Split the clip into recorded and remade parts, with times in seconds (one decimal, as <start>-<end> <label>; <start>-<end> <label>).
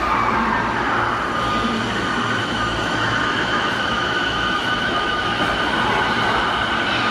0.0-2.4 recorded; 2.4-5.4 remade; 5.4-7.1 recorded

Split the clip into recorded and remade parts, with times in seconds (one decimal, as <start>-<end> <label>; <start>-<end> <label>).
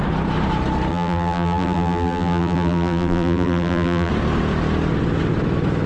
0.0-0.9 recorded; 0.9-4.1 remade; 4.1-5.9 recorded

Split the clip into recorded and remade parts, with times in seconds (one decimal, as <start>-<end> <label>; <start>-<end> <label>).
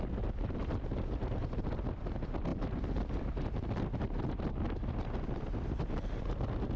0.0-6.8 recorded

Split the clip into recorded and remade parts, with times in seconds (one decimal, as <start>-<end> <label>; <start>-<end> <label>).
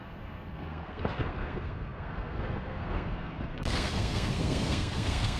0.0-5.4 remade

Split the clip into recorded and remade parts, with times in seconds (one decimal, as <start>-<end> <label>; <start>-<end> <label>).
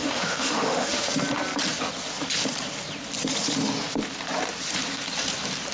0.0-1.1 remade; 1.1-5.7 recorded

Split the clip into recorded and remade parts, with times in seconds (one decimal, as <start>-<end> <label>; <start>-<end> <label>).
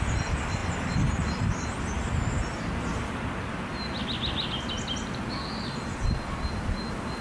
0.0-7.2 recorded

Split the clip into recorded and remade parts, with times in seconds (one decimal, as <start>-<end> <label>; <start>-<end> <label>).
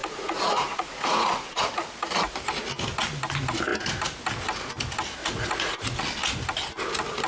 0.0-1.7 remade; 1.7-5.2 recorded; 5.2-6.0 remade; 6.0-7.3 recorded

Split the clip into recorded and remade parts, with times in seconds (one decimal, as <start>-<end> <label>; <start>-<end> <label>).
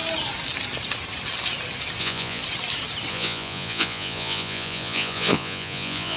0.0-2.0 recorded; 2.0-2.4 remade; 2.4-3.1 recorded; 3.1-6.2 remade